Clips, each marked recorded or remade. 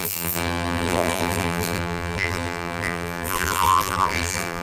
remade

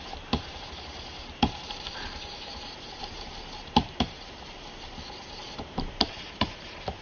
remade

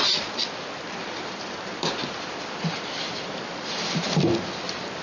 remade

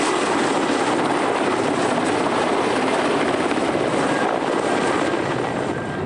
remade